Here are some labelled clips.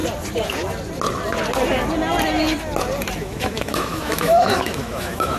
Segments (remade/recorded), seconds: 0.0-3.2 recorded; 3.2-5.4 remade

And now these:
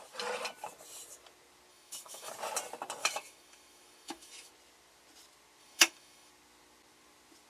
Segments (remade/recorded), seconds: 0.0-1.7 recorded; 1.7-2.3 remade; 2.3-3.0 recorded; 3.0-4.5 remade; 4.5-5.6 recorded; 5.6-6.3 remade; 6.3-7.5 recorded